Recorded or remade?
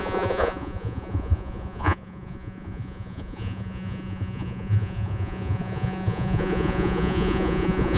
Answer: remade